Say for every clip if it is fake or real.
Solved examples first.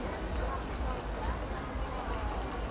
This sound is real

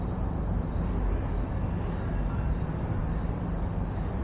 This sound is real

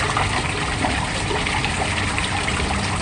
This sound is real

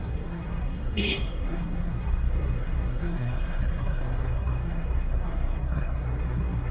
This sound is fake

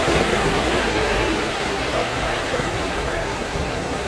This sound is fake